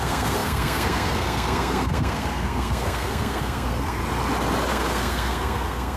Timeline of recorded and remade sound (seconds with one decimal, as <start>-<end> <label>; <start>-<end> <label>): 0.0-4.0 remade; 4.0-4.7 recorded; 4.7-6.0 remade